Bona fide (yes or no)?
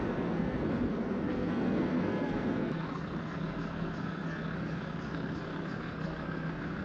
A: no